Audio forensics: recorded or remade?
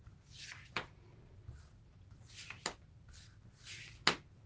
recorded